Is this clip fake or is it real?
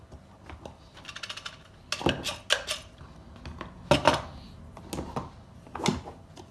real